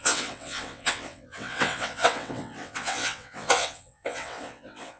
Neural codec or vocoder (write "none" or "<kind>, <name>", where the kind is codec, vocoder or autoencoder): vocoder, WaveNeXt